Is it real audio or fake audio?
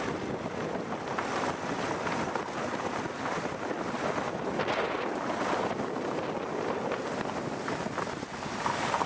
real